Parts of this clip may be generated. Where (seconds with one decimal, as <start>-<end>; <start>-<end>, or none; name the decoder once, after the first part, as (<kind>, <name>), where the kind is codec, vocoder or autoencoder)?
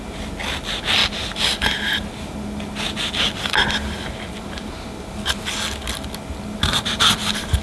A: none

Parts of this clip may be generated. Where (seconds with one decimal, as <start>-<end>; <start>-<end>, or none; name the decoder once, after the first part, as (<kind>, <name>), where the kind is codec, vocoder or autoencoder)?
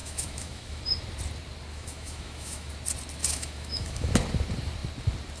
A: 0.0-0.8 (autoencoder, DAC-VAE); 1.7-2.7; 3.2-4.1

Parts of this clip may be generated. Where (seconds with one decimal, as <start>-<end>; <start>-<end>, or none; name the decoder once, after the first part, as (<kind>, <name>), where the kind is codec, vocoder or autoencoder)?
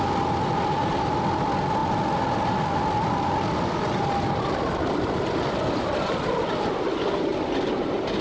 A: none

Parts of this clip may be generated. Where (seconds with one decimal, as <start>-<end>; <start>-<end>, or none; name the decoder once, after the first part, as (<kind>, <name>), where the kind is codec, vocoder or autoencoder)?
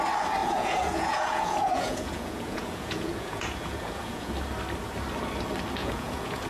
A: 0.4-4.3 (vocoder, Vocos); 5.8-6.5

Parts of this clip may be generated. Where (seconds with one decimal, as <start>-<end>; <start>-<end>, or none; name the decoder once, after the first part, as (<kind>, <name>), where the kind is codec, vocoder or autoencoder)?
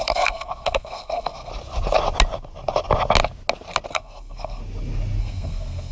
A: 0.0-1.5 (codec, SNAC); 3.9-4.6; 5.2-5.9